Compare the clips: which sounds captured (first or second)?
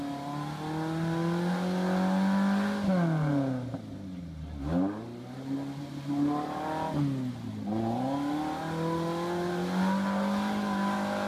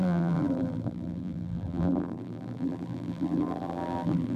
first